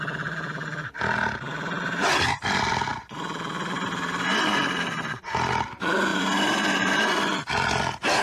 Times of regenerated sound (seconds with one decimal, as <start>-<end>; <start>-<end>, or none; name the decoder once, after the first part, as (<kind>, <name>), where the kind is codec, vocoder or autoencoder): none